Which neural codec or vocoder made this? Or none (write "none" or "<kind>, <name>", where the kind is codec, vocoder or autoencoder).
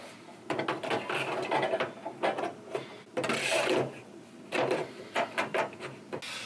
none